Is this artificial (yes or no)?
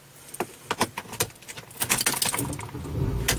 no